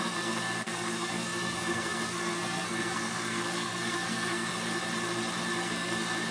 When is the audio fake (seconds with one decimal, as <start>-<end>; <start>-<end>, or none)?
0.0-4.5; 5.6-6.3